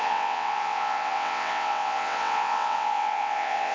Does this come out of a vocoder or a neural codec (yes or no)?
yes